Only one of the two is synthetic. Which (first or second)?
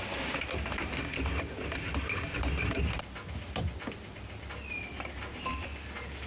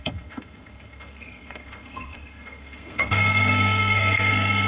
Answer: second